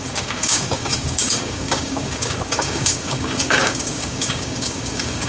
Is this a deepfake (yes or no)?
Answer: yes